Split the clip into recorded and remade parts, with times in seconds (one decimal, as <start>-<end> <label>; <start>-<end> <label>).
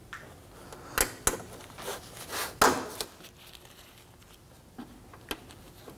0.0-6.0 recorded